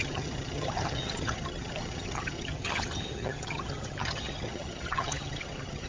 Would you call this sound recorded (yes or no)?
no